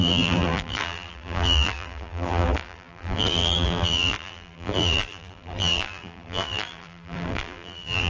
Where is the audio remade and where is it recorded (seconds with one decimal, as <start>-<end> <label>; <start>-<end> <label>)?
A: 0.0-8.1 remade